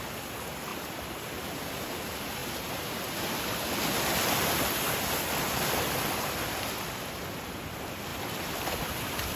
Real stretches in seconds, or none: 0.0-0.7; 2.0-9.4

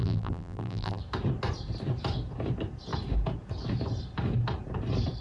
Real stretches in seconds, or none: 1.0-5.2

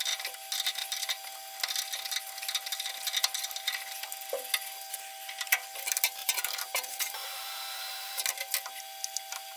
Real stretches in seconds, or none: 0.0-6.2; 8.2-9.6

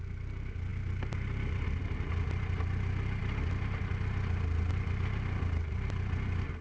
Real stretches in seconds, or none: 0.0-6.6

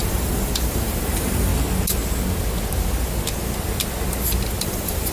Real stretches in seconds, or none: 1.5-4.6

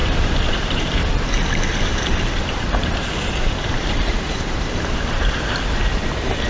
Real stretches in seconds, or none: 1.1-1.9; 5.8-6.5